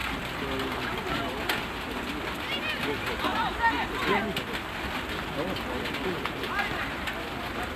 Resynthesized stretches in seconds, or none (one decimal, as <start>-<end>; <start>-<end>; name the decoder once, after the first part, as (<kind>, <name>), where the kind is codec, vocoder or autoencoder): none